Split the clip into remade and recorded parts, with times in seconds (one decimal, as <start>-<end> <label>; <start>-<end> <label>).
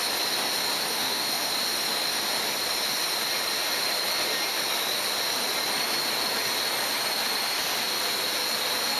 0.0-0.9 recorded; 0.9-1.5 remade; 1.5-9.0 recorded